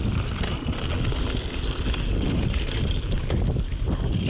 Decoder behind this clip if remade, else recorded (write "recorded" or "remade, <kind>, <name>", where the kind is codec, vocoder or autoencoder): recorded